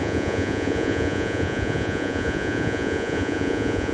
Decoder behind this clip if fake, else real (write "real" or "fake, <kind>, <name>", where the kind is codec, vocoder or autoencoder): fake, vocoder, Vocos